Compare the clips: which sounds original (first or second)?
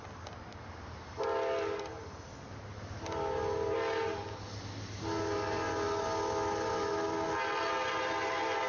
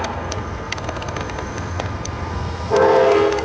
first